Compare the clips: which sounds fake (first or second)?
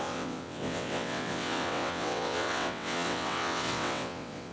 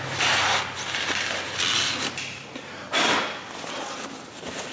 first